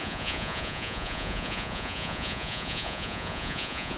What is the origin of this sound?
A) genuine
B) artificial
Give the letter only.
B